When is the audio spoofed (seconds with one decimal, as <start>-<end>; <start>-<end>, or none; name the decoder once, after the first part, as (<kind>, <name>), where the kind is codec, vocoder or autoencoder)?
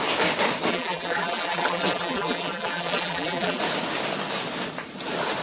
0.7-3.6 (vocoder, BigVGAN v2)